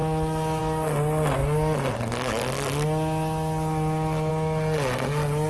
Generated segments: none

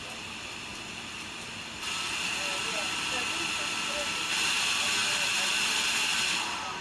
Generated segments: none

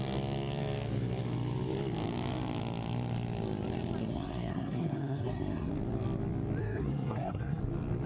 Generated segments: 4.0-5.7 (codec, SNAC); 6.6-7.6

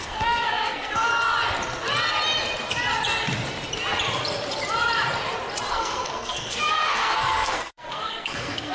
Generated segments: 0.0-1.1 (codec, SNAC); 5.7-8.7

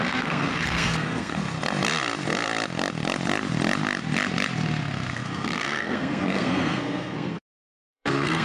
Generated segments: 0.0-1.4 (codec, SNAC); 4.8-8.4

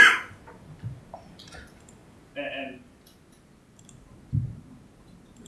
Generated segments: none